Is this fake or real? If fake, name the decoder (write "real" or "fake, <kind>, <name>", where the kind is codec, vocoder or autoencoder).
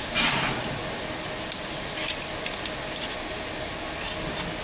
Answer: real